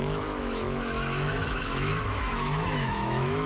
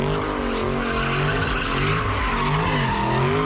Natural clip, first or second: second